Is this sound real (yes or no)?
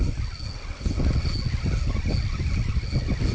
yes